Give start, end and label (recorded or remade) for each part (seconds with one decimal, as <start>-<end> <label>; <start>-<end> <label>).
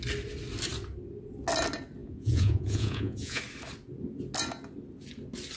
0.0-2.0 recorded; 2.0-3.4 remade; 3.4-5.6 recorded